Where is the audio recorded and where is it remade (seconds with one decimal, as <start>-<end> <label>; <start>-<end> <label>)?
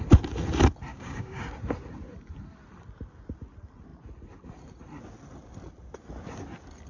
0.0-0.9 recorded; 0.9-1.4 remade; 1.4-6.9 recorded